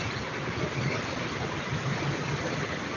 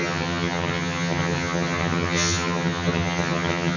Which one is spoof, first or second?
second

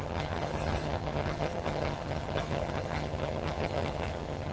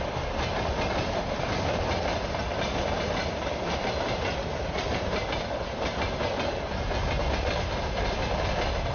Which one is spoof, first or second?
first